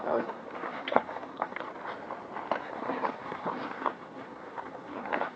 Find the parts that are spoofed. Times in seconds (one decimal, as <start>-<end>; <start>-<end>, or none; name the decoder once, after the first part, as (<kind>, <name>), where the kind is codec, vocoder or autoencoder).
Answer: 0.0-1.7 (codec, SNAC); 2.6-5.4